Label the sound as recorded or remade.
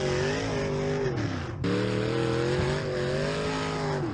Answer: recorded